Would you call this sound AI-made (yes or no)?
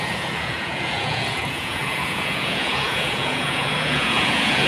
yes